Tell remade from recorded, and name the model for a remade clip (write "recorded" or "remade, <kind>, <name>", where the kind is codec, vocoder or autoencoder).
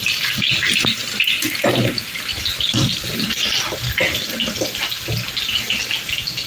recorded